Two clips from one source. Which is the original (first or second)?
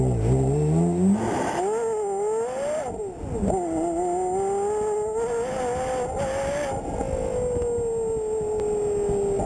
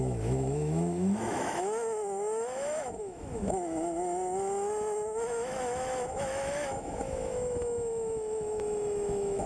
first